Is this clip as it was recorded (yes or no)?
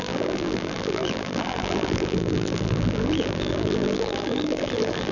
no